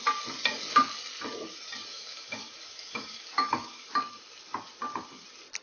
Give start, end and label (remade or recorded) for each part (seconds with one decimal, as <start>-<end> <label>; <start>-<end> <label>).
0.0-1.9 recorded; 1.9-3.9 remade; 3.9-5.6 recorded